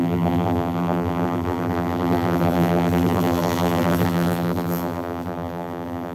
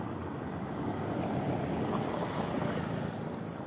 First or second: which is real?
second